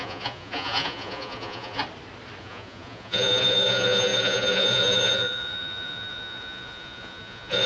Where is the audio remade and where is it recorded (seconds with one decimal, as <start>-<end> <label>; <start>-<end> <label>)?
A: 0.0-1.8 remade; 1.8-2.4 recorded; 2.4-7.7 remade